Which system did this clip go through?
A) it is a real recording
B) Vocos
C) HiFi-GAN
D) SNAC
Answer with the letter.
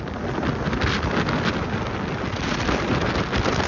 A